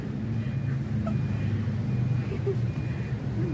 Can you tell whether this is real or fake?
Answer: real